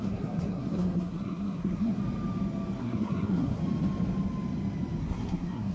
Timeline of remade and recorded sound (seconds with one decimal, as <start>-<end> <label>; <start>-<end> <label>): 0.0-2.0 remade; 2.0-2.8 recorded; 2.8-3.6 remade; 3.6-5.0 recorded; 5.0-5.7 remade